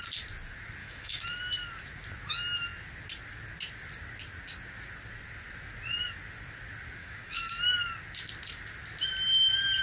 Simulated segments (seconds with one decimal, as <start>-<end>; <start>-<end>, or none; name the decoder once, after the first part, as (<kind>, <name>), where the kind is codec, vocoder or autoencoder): 0.8-1.4 (autoencoder, DAC-VAE); 7.0-7.6